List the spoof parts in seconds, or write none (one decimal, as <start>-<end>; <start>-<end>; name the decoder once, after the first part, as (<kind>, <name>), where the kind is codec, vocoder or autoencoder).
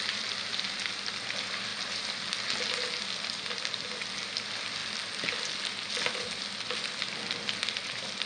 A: none